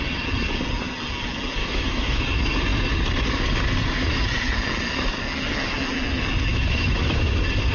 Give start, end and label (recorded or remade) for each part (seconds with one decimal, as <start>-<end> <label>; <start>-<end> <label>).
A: 0.0-1.6 recorded; 1.6-2.2 remade; 2.2-6.5 recorded; 6.5-7.3 remade; 7.3-7.7 recorded